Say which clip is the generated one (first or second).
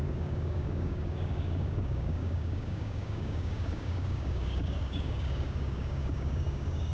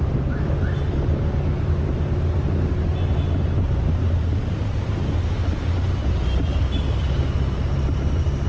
first